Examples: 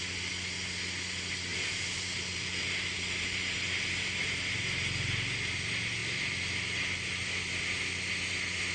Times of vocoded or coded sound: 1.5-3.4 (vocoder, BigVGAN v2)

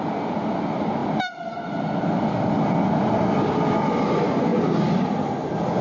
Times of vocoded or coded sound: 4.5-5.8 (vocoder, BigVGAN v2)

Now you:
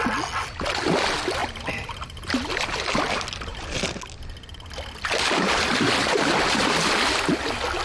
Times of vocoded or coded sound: 1.4-3.0 (vocoder, BigVGAN v2)